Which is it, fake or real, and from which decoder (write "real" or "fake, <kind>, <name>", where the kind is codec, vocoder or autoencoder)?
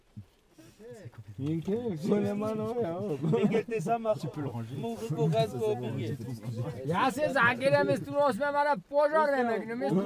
real